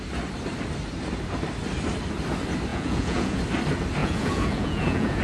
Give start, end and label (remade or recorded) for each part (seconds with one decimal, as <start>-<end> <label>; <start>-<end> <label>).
0.0-2.7 recorded; 2.7-3.4 remade; 3.4-4.0 recorded; 4.0-5.2 remade